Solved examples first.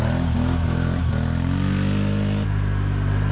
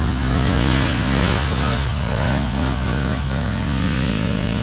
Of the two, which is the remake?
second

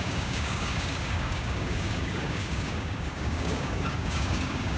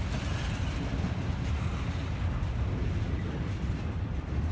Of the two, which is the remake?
first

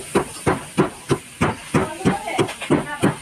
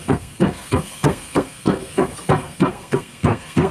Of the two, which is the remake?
second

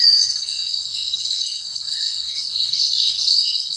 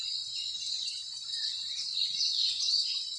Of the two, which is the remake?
first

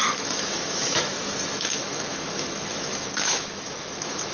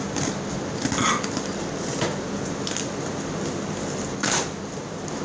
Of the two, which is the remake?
first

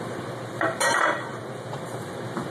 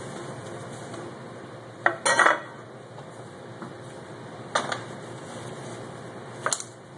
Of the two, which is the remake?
first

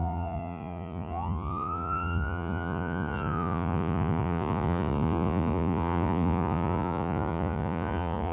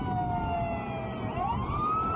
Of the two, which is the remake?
first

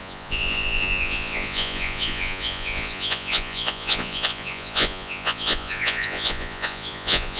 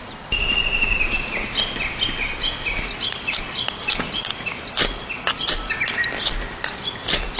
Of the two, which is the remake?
first